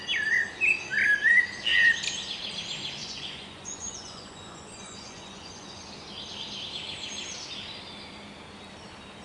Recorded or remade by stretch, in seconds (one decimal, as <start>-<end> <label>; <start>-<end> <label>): 0.0-3.0 recorded; 3.0-5.8 remade; 5.8-9.2 recorded